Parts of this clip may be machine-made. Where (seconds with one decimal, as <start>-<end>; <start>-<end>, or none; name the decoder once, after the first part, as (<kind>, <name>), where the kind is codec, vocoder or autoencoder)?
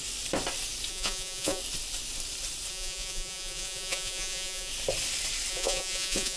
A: 0.9-1.6 (vocoder, Vocos); 2.7-4.7; 5.5-6.4